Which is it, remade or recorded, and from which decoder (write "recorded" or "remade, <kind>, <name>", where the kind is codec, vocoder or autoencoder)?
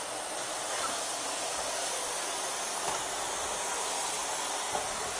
recorded